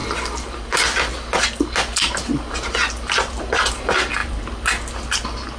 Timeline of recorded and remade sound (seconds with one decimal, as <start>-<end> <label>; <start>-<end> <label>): 0.0-5.6 recorded